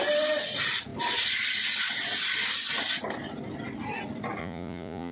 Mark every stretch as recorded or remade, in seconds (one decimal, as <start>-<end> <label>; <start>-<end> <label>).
0.0-4.4 recorded; 4.4-5.1 remade